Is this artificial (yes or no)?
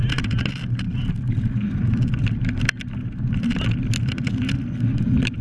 no